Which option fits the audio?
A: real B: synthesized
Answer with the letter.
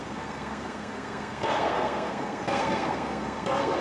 B